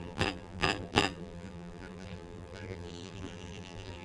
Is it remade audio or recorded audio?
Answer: remade